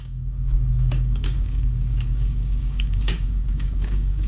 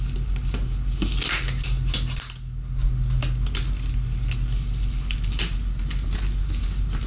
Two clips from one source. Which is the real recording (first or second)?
second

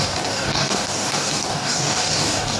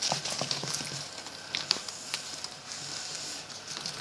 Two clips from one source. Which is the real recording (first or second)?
second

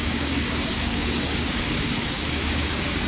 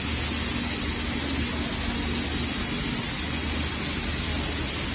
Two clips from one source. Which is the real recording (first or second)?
second